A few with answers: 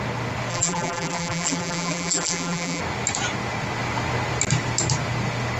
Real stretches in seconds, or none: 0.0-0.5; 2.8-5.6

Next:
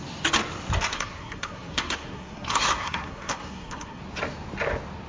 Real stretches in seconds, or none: 0.0-0.9; 4.0-5.1

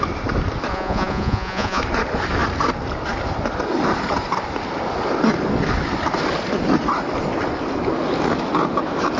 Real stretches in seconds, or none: 0.0-0.7; 1.8-9.2

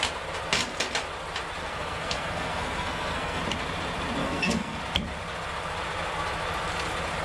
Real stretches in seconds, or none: 0.0-1.6; 3.4-4.2; 4.8-7.2

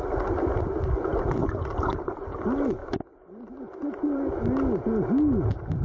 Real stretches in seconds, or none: 0.0-1.1; 1.9-2.8; 3.6-5.8

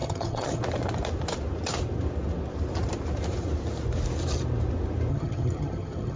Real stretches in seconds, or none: 0.6-5.1

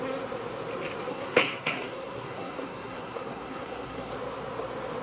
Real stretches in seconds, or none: 0.0-1.1; 4.1-5.0

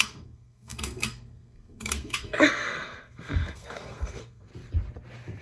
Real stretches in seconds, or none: 4.5-5.4